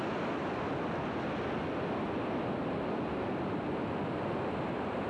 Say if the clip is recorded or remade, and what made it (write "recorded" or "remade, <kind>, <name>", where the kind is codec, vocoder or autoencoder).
recorded